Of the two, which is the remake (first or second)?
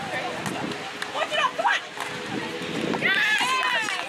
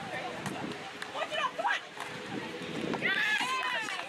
second